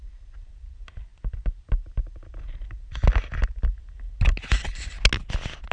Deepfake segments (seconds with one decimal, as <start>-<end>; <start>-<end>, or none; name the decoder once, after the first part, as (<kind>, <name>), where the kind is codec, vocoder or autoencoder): none